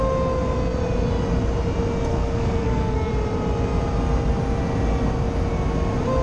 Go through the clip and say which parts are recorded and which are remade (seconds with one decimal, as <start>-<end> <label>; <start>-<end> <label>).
0.0-2.1 recorded; 2.1-3.1 remade; 3.1-6.2 recorded